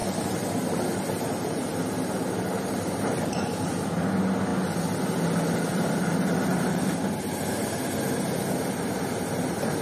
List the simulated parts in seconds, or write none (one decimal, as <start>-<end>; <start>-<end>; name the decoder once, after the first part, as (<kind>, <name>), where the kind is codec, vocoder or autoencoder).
0.0-3.7 (vocoder, BigVGAN v2)